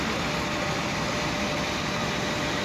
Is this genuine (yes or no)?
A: yes